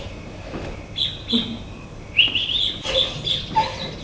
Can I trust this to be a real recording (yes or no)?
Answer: yes